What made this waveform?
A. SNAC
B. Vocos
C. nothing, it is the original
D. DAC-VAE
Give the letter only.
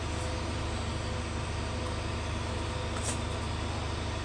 C